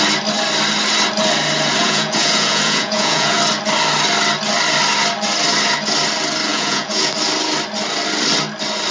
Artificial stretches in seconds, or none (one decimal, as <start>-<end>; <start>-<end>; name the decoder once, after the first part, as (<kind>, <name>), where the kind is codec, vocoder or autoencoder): 1.8-3.4 (vocoder, Vocos); 6.5-7.1